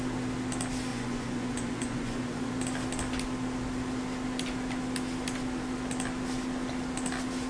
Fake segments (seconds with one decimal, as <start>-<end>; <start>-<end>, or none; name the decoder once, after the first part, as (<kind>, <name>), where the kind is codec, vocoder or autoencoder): 0.9-2.5 (vocoder, Vocos)

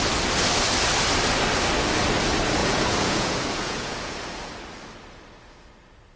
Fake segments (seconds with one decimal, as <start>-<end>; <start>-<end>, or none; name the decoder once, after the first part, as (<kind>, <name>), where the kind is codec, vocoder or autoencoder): 2.6-4.5 (vocoder, Vocos)

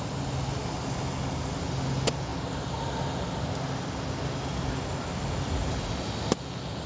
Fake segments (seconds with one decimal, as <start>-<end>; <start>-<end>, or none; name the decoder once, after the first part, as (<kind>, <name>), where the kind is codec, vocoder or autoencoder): none

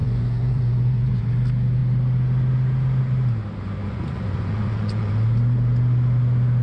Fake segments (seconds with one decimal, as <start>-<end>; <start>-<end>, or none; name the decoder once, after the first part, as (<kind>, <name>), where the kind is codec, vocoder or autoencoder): 0.0-1.2 (vocoder, Vocos); 3.8-5.1

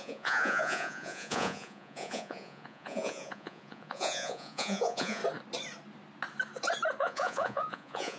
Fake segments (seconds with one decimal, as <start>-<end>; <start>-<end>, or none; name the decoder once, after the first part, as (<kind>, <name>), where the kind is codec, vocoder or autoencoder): 0.0-5.2 (vocoder, Vocos); 7.0-8.2

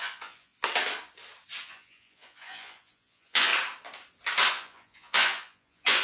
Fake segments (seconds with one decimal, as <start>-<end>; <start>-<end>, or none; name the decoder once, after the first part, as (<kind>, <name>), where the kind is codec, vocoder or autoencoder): 0.0-0.5 (vocoder, Vocos); 1.6-3.5; 4.5-6.0